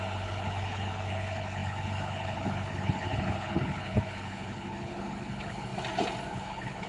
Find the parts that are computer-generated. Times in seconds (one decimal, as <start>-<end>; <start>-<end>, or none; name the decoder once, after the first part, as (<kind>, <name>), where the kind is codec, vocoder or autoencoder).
0.0-5.7 (codec, HILCodec); 6.3-6.9